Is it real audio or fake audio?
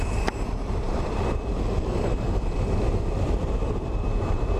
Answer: fake